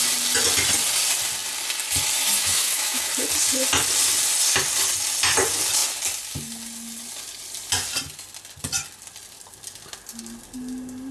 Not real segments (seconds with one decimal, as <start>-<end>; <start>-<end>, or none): 2.4-3.1

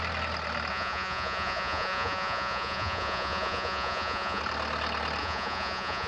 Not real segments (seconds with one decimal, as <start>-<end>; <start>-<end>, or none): 0.7-4.4; 5.2-6.1

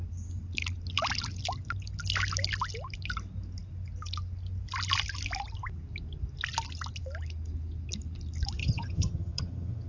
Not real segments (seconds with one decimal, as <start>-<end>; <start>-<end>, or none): 8.6-9.9